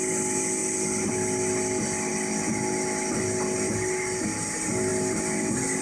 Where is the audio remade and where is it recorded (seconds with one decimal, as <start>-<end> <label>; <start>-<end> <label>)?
0.0-5.8 recorded